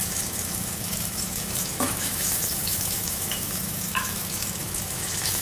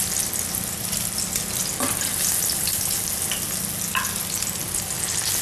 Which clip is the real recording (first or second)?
second